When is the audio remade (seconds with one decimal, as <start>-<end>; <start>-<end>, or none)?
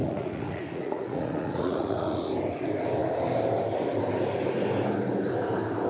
0.0-2.3